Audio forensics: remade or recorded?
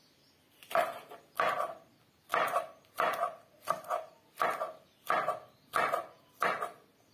recorded